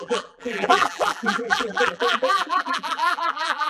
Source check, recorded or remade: remade